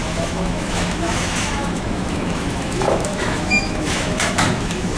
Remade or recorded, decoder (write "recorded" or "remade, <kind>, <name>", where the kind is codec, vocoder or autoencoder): remade, autoencoder, DAC-VAE